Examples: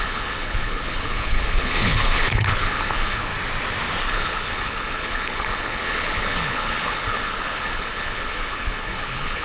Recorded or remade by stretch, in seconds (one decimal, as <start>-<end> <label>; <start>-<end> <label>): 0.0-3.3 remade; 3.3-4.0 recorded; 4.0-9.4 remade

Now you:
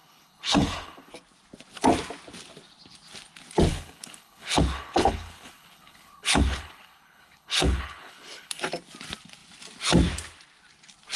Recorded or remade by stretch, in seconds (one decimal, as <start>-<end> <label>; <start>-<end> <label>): 0.0-1.1 remade; 1.1-3.7 recorded; 3.7-8.6 remade; 8.6-11.2 recorded

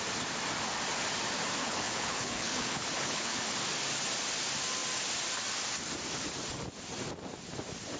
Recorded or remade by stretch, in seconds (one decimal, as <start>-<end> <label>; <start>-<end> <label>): 0.0-1.6 recorded; 1.6-3.4 remade; 3.4-8.0 recorded

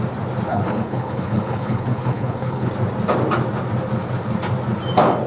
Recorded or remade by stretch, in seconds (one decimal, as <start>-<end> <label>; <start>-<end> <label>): 0.0-0.5 recorded; 0.5-2.7 remade; 2.7-5.3 recorded